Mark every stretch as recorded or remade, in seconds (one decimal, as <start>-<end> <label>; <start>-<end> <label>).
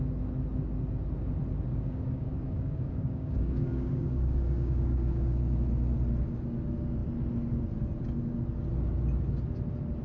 0.0-1.7 recorded; 1.7-5.4 remade; 5.4-10.0 recorded